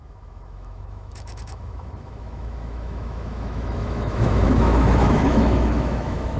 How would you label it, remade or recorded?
remade